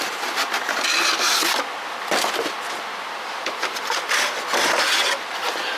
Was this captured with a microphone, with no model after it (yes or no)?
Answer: yes